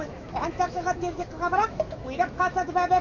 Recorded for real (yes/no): no